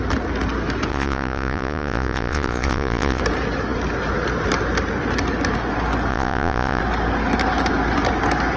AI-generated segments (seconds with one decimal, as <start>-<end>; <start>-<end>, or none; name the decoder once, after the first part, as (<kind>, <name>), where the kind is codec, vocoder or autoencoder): 0.9-3.2 (vocoder, Vocos); 6.1-6.8